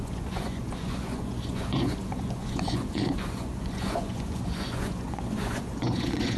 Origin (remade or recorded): remade